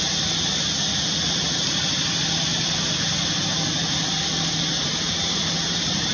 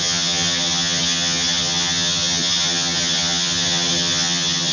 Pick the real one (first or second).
first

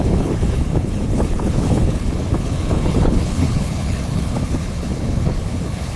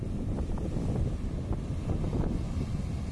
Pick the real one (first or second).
second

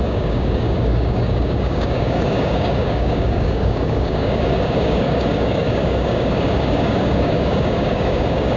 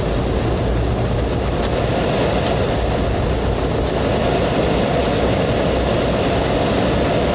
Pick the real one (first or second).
second